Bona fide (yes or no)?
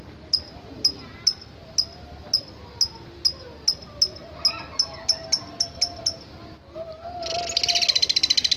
yes